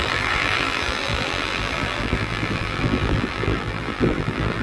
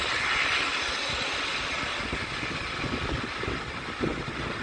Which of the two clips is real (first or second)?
second